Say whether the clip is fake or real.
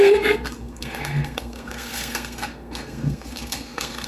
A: fake